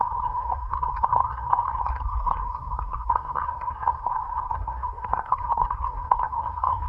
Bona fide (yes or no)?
no